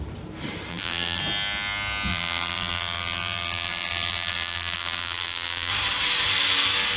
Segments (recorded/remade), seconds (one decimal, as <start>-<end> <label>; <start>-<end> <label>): 0.0-0.7 recorded; 0.7-1.2 remade; 1.2-2.1 recorded; 2.1-5.7 remade; 5.7-7.0 recorded